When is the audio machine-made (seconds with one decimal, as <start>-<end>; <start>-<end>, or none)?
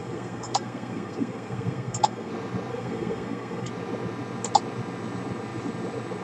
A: 0.0-2.3; 2.7-3.7